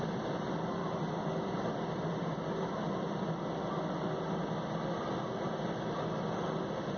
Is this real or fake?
real